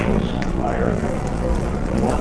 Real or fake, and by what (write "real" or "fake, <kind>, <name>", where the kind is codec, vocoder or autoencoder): fake, vocoder, Vocos